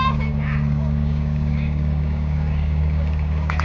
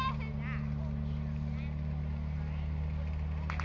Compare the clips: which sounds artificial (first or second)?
first